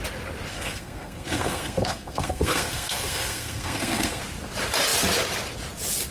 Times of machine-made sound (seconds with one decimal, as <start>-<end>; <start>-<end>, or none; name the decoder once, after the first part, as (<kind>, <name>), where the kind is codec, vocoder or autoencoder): 0.5-4.2 (codec, SNAC)